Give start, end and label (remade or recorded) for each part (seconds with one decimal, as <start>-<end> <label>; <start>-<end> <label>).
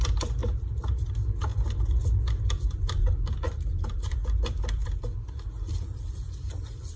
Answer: 0.0-7.0 recorded